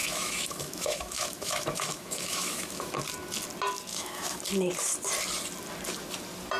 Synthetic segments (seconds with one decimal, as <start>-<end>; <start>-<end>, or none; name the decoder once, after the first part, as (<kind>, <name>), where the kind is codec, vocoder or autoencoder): 0.0-3.0 (autoencoder, DAC-VAE); 3.9-4.4